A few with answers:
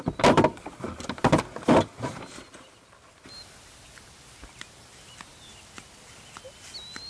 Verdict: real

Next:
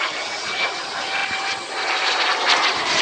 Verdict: fake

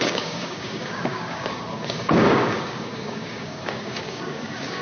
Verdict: fake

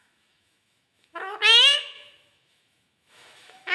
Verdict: fake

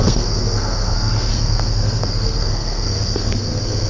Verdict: fake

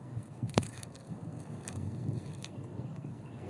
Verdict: fake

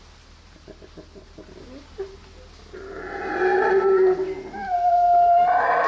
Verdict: real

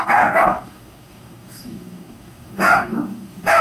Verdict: fake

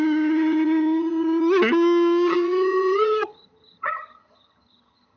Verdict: fake